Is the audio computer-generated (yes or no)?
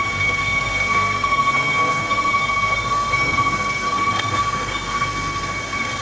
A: yes